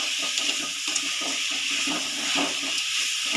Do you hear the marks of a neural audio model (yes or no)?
no